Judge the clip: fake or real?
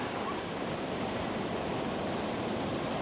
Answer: real